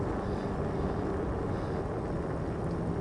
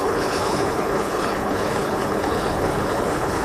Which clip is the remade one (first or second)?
second